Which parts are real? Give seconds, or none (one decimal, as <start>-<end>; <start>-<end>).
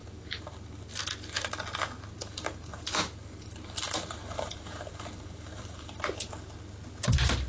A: 0.8-2.2; 6.0-7.5